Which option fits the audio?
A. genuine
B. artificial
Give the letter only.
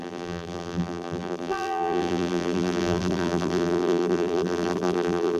B